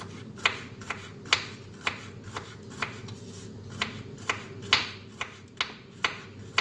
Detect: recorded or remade recorded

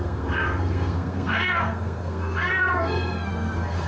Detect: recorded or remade remade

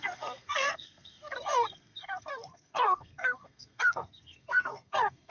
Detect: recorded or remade remade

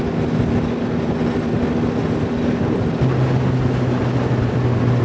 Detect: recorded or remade recorded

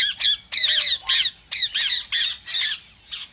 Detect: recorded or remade recorded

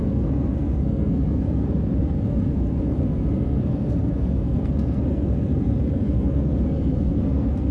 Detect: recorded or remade remade